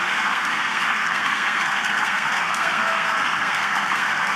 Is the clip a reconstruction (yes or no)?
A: yes